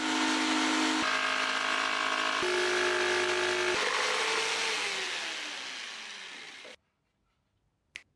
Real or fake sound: real